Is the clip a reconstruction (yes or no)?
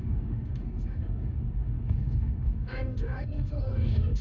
yes